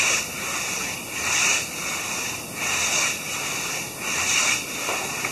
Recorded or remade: recorded